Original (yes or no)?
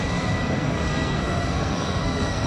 no